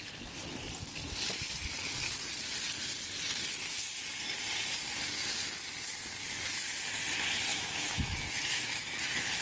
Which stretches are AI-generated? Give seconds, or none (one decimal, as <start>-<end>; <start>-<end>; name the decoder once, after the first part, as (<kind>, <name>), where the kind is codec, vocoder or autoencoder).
7.5-8.9 (autoencoder, DAC-VAE)